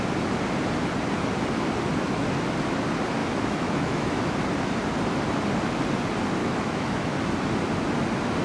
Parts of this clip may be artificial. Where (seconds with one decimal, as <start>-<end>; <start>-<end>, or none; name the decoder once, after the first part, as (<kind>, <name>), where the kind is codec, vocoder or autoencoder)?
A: 3.2-4.4 (autoencoder, DAC-VAE); 6.4-7.2